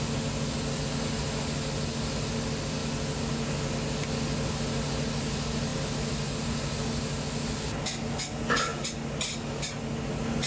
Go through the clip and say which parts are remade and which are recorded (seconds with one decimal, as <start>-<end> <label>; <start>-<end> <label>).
0.0-10.5 recorded